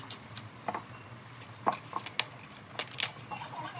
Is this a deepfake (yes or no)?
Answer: no